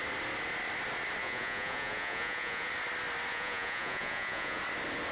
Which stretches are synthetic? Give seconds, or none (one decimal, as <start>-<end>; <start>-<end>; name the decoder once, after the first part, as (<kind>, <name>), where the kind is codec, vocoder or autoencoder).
1.2-2.7 (vocoder, Vocos); 3.3-4.6

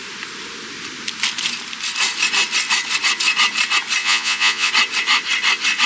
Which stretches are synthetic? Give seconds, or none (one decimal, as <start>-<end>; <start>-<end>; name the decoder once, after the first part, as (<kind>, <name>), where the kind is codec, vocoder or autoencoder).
4.0-4.7 (vocoder, Vocos)